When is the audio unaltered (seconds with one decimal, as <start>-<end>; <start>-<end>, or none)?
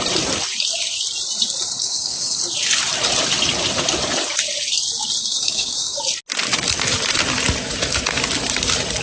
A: 0.0-1.8; 2.4-5.2; 6.0-9.0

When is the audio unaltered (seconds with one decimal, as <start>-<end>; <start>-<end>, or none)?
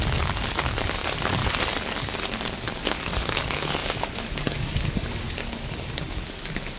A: 1.4-2.5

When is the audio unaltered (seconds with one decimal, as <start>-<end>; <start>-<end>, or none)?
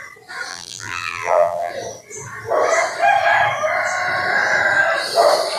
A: 0.0-0.5; 1.7-5.6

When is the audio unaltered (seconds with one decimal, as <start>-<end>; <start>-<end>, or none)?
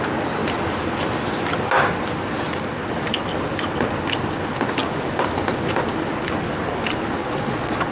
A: 0.0-7.2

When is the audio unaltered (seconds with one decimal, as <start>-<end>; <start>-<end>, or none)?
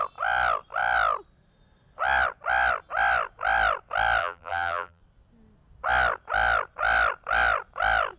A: 0.0-4.2; 5.0-8.2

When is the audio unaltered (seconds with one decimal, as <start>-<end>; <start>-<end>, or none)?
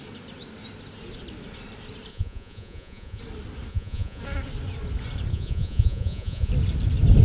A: 0.0-2.1; 3.2-3.7; 4.2-5.3; 6.5-7.2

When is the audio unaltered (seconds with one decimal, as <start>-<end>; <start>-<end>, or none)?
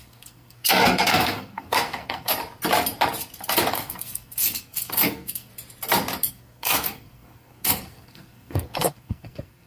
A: 2.3-3.7; 5.5-6.3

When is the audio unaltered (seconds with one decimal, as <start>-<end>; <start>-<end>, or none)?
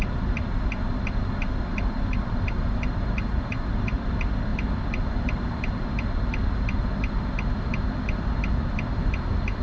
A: 0.0-1.7; 4.1-9.6